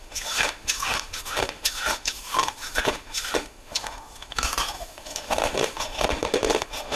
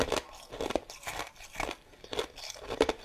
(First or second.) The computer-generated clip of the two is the first